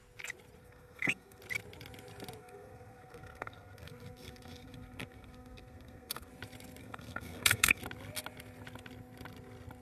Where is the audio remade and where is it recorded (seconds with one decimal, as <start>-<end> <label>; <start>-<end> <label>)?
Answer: 0.0-0.6 recorded; 0.6-1.4 remade; 1.4-2.4 recorded; 2.4-6.3 remade; 6.3-6.8 recorded; 6.8-7.8 remade; 7.8-9.8 recorded